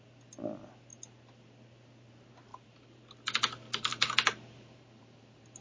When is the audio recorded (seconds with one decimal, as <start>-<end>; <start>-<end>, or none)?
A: 0.0-2.5; 3.0-3.9